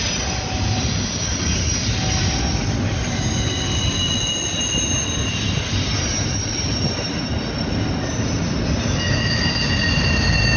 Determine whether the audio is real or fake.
real